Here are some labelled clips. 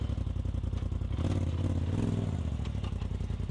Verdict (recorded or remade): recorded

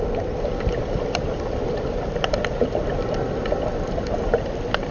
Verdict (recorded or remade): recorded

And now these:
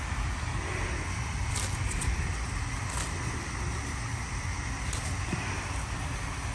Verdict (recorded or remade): recorded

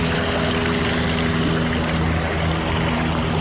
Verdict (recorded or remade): recorded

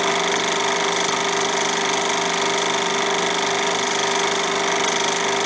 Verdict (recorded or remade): recorded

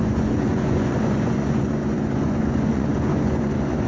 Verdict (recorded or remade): remade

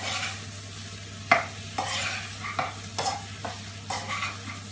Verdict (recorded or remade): recorded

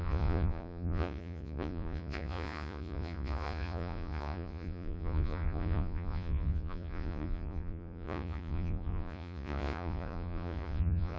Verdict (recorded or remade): remade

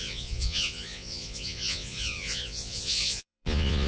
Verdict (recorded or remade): remade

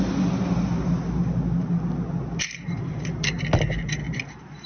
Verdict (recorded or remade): recorded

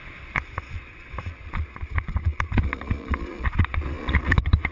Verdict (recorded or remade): remade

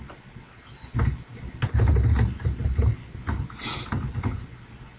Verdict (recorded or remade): recorded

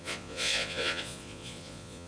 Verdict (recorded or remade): remade